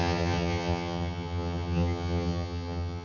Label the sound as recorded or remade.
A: remade